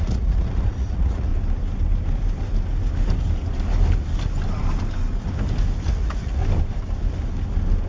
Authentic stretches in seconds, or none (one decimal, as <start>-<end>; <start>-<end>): 1.3-5.9; 6.4-7.9